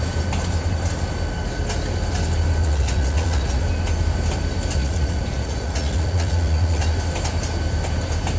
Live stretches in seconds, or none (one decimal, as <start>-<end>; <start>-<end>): 0.0-2.6; 3.6-4.8; 6.8-8.4